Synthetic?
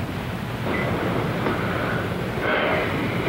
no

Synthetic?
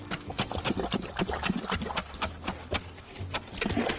no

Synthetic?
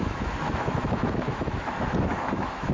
yes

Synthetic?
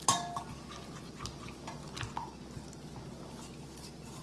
no